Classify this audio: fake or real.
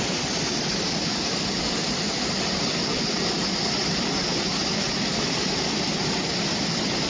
fake